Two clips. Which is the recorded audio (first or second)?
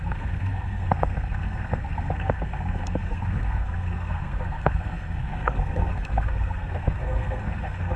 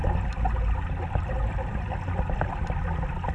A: second